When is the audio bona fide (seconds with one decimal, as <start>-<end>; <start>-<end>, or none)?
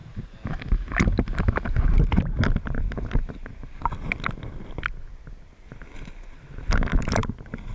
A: 0.0-7.7